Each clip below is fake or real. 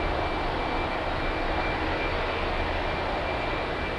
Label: real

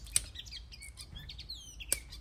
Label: real